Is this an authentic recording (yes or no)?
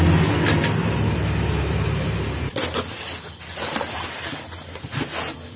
yes